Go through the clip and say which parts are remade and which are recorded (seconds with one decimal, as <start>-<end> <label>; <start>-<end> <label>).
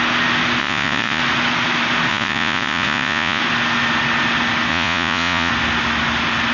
0.0-0.6 recorded; 0.6-1.2 remade; 1.2-2.1 recorded; 2.1-3.4 remade; 3.4-4.7 recorded; 4.7-5.5 remade; 5.5-6.5 recorded